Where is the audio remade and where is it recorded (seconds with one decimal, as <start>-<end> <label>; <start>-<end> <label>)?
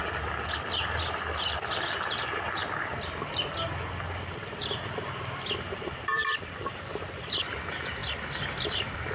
0.0-2.6 remade; 2.6-4.6 recorded; 4.6-9.1 remade